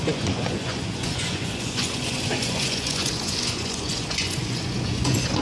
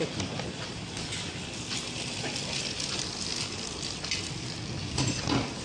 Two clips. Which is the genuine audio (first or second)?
second